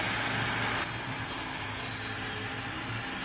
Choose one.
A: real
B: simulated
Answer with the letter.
A